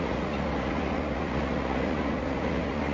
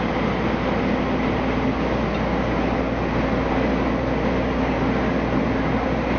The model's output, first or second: first